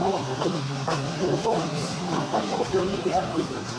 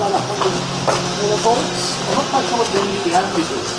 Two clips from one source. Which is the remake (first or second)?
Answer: first